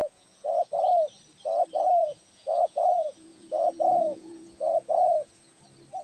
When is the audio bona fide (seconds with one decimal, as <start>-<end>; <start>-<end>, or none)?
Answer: 0.7-2.0; 5.6-6.0